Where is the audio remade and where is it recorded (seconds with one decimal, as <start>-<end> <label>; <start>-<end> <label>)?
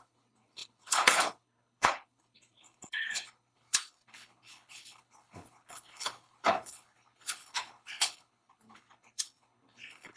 0.0-10.2 remade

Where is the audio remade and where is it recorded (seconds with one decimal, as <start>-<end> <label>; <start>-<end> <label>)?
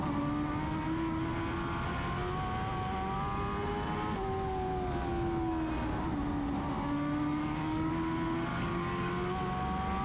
0.0-7.4 recorded; 7.4-7.9 remade; 7.9-8.5 recorded; 8.5-9.1 remade; 9.1-10.0 recorded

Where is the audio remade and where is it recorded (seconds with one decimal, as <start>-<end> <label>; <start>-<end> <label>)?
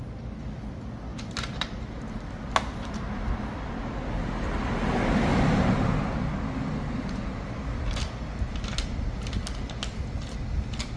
0.0-1.1 recorded; 1.1-3.3 remade; 3.3-5.3 recorded; 5.3-6.0 remade; 6.0-11.0 recorded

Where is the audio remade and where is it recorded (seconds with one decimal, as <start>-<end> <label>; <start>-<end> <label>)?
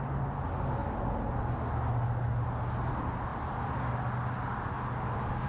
0.0-3.3 recorded; 3.3-3.9 remade; 3.9-5.5 recorded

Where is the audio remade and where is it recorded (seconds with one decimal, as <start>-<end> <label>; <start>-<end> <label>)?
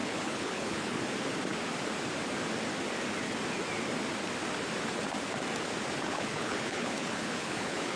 0.0-1.0 remade; 1.0-6.0 recorded; 6.0-8.0 remade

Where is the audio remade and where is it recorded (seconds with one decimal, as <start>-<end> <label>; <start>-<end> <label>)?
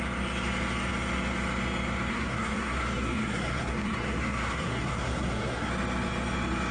0.0-2.1 recorded; 2.1-5.7 remade; 5.7-6.7 recorded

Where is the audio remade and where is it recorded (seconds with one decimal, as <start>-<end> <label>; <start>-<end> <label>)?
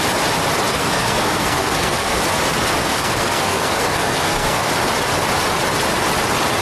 0.0-0.7 recorded; 0.7-2.2 remade; 2.2-2.8 recorded; 2.8-4.7 remade; 4.7-6.6 recorded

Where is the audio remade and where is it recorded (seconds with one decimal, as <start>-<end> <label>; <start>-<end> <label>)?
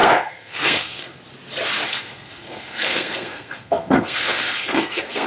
0.0-1.2 remade; 1.2-1.9 recorded; 1.9-5.3 remade